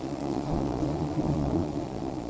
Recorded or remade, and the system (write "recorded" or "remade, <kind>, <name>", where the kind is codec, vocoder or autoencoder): remade, vocoder, Vocos